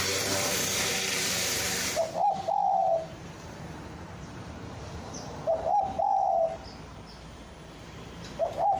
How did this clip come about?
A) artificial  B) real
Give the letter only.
A